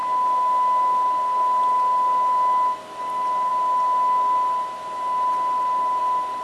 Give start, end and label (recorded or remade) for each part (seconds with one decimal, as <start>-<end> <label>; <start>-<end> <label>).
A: 0.0-6.4 recorded